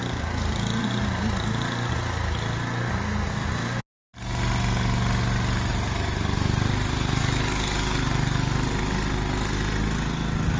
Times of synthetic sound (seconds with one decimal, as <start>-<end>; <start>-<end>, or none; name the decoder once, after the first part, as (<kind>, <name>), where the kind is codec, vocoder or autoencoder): 5.7-7.2 (vocoder, BigVGAN v2)